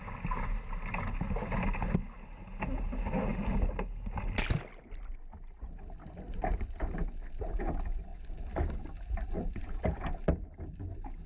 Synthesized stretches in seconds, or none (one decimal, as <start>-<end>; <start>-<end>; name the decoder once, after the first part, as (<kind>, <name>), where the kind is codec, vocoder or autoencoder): none

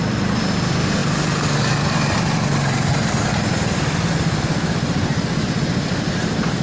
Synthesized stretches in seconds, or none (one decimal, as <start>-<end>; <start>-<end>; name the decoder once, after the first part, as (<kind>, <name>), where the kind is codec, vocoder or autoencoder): none

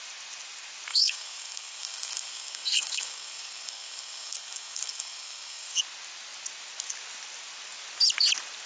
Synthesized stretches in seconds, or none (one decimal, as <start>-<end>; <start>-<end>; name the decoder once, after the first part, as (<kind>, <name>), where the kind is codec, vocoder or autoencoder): 0.9-5.8 (codec, SNAC)

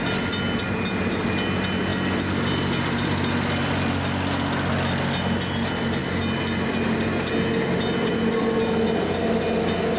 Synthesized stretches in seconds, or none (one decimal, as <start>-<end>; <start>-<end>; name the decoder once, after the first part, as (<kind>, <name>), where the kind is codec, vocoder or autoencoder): none

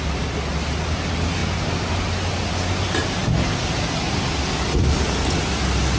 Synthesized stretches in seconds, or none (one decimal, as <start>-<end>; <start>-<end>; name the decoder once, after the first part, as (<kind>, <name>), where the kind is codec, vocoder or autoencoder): none